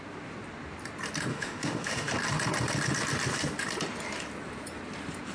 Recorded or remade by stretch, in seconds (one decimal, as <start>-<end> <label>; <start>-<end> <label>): 0.0-1.3 recorded; 1.3-2.1 remade; 2.1-5.3 recorded